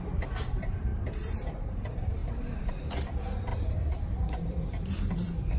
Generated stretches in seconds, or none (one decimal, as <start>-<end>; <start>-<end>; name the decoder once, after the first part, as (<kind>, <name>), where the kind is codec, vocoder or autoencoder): 0.0-5.6 (vocoder, BigVGAN v2)